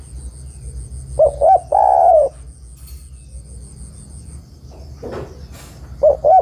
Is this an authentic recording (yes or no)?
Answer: yes